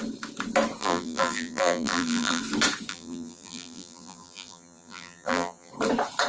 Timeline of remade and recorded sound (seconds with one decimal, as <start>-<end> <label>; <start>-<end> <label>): 0.0-0.8 recorded; 0.8-2.4 remade; 2.4-2.9 recorded; 2.9-5.7 remade; 5.7-6.3 recorded